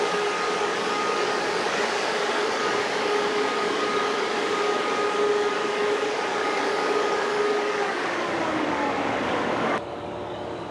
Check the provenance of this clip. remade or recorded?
remade